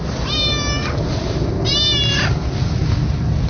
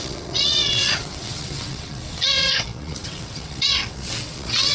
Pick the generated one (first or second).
second